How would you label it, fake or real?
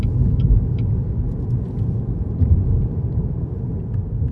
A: real